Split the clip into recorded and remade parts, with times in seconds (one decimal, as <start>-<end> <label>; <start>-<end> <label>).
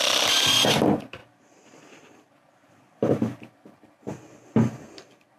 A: 0.0-1.2 recorded; 1.2-3.8 remade; 3.8-5.4 recorded